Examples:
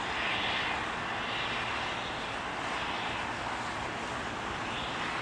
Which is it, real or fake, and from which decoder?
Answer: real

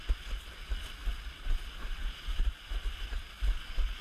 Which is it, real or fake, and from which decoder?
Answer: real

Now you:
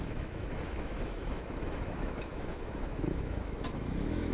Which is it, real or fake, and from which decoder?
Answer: fake, autoencoder, DAC-VAE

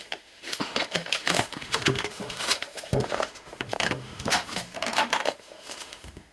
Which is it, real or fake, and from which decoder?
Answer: fake, autoencoder, DAC-VAE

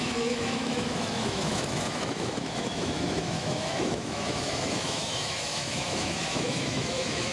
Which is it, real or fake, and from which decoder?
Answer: fake, autoencoder, DAC-VAE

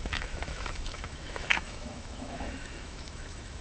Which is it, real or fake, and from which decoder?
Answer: fake, autoencoder, DAC-VAE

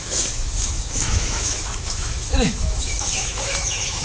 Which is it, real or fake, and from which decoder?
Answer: fake, autoencoder, DAC-VAE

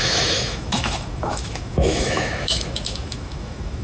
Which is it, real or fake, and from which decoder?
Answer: fake, autoencoder, DAC-VAE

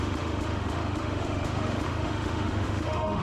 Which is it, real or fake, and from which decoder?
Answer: fake, autoencoder, DAC-VAE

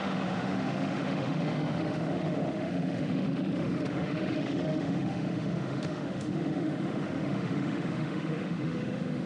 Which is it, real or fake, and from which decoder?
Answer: fake, autoencoder, DAC-VAE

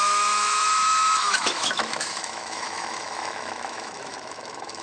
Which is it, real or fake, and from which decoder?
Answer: fake, autoencoder, DAC-VAE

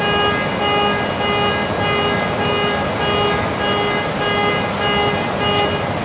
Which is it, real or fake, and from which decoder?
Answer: real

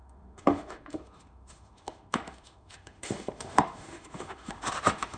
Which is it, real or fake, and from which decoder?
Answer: fake, autoencoder, DAC-VAE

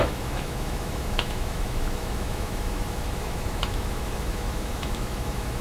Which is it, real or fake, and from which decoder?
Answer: fake, autoencoder, DAC-VAE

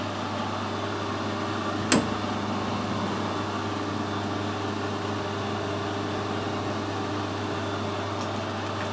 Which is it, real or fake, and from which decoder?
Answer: real